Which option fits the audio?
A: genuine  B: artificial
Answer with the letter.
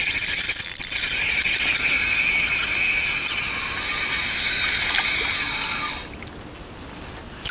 A